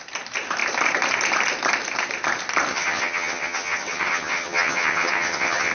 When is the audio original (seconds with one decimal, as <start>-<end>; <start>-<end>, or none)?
0.0-2.7